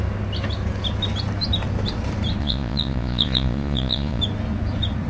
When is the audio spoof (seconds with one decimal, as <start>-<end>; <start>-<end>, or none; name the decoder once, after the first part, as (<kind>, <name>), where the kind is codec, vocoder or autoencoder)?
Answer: 2.4-4.2 (vocoder, Vocos)